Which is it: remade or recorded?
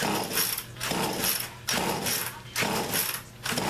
recorded